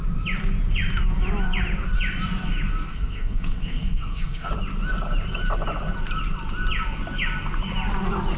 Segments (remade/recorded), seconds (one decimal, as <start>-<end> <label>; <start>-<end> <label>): 0.0-2.9 recorded; 2.9-4.5 remade; 4.5-8.4 recorded